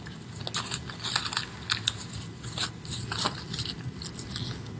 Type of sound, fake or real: real